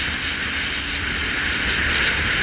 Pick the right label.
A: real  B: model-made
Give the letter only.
A